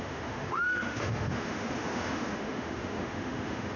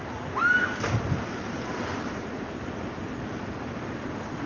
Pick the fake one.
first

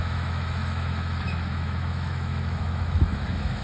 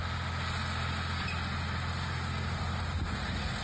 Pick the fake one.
first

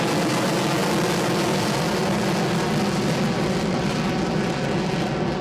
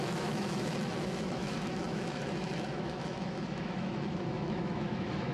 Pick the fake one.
second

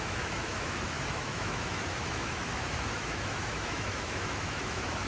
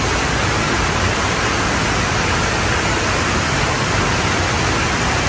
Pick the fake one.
first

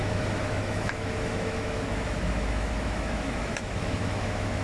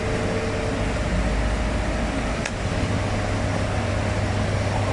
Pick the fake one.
first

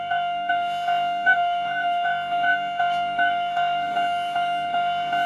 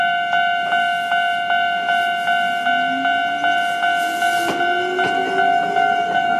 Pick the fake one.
first